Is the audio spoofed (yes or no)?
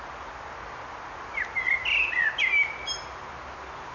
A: no